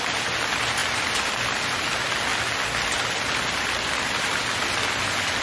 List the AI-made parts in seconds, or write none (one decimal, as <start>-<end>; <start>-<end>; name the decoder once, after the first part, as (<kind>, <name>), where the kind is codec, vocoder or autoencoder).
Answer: none